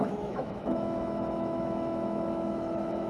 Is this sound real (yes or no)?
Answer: no